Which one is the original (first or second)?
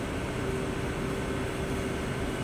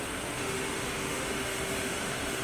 first